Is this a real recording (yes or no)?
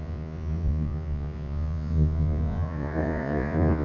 no